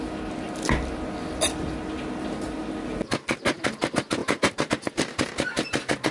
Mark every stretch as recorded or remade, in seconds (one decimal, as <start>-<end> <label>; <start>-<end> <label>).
0.0-4.2 recorded; 4.2-4.7 remade; 4.7-6.1 recorded